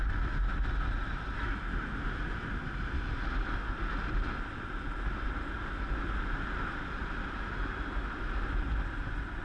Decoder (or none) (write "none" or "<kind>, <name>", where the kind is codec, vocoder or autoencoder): none